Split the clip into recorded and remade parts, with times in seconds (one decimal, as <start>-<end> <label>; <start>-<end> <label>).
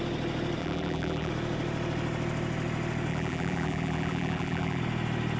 0.0-0.6 recorded; 0.6-1.3 remade; 1.3-3.1 recorded; 3.1-4.8 remade; 4.8-5.4 recorded